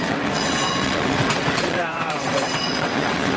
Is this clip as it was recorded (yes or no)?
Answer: no